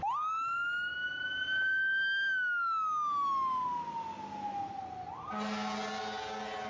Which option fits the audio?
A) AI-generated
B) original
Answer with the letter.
B